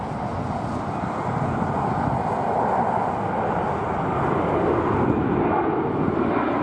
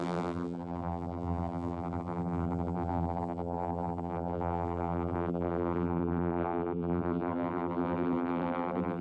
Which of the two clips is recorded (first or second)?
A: first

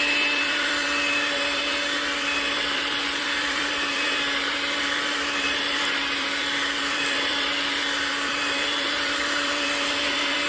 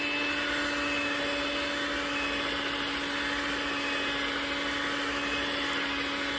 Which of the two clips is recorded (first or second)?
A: second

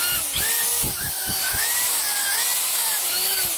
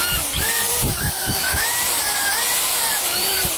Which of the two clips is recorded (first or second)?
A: first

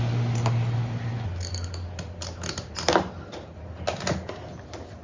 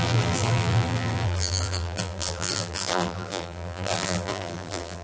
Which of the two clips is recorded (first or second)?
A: first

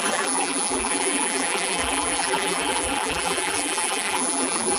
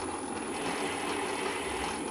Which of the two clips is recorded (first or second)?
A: second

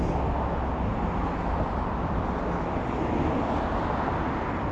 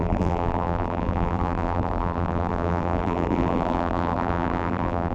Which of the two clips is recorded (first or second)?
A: first